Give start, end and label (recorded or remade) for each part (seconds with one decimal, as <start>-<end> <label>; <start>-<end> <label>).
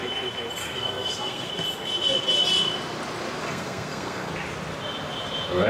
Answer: 0.0-0.6 recorded; 0.6-1.5 remade; 1.5-3.4 recorded; 3.4-4.3 remade; 4.3-5.7 recorded